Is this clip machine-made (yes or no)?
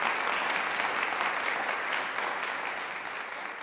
no